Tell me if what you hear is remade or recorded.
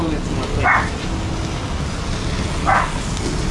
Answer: recorded